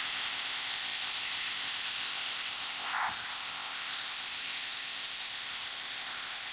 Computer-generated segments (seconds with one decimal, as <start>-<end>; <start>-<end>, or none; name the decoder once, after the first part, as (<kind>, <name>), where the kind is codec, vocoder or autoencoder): 0.0-6.5 (codec, ZipCodec)